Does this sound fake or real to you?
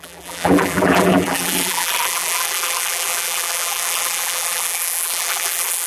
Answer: fake